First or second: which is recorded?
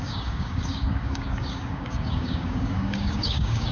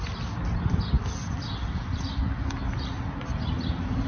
second